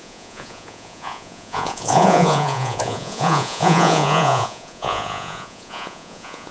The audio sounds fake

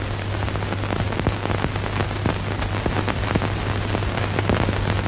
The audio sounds real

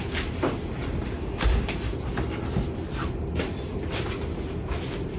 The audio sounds real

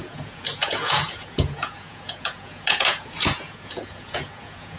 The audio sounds fake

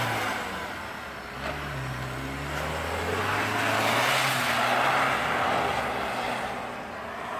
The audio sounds real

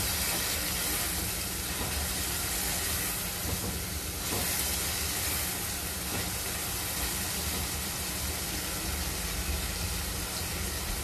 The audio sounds real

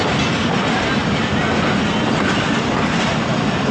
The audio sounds real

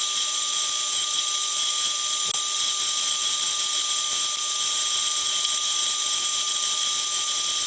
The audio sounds real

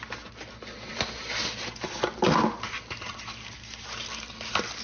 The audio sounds real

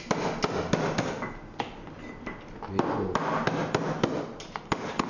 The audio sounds real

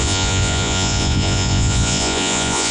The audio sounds fake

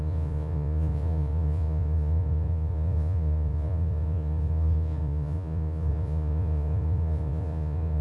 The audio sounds fake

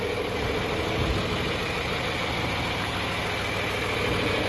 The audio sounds real